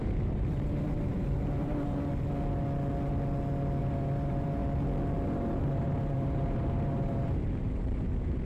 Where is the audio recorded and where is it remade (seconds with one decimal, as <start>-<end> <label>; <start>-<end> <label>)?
0.0-2.1 remade; 2.1-3.8 recorded; 3.8-4.6 remade; 4.6-5.6 recorded; 5.6-8.4 remade